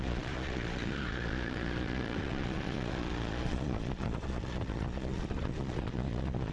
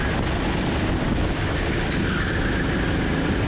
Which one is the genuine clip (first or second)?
second